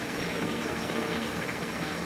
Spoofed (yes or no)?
yes